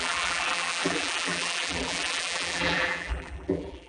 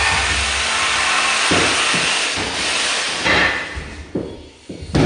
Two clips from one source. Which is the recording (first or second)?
second